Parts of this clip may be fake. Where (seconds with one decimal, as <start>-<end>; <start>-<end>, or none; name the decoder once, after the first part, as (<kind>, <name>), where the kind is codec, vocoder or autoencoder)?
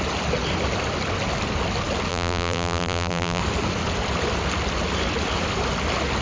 2.1-3.4 (vocoder, BigVGAN v2)